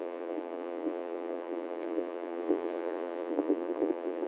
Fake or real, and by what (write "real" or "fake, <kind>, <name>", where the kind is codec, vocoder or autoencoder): fake, vocoder, Vocos